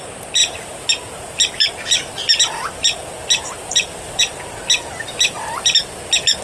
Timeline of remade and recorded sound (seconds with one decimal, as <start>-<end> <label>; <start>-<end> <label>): 0.0-0.4 recorded; 0.4-4.2 remade; 4.2-6.4 recorded

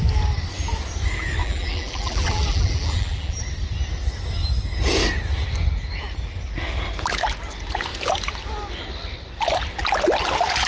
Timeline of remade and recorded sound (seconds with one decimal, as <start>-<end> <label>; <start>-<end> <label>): 0.0-1.4 recorded; 1.4-3.4 remade; 3.4-10.7 recorded

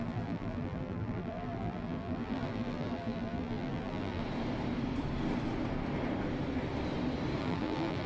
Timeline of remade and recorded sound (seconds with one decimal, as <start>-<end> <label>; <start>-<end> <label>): 0.0-4.2 remade; 4.2-7.4 recorded; 7.4-8.1 remade

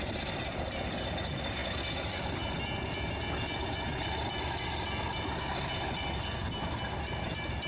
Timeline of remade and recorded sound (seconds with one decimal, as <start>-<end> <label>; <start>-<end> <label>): 0.0-1.6 remade; 1.6-6.2 recorded; 6.2-7.7 remade

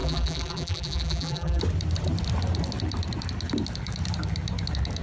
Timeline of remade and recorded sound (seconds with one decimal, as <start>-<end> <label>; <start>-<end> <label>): 0.0-1.6 remade; 1.6-5.0 recorded